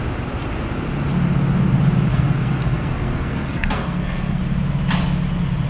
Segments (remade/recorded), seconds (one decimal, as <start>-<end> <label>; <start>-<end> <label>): 0.0-2.1 recorded; 2.1-4.4 remade; 4.4-5.7 recorded